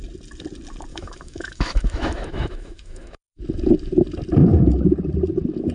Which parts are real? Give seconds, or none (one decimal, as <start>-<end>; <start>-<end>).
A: 0.0-0.9; 3.4-5.7